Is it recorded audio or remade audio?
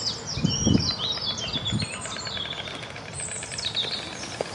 recorded